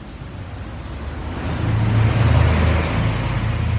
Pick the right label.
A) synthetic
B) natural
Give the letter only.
B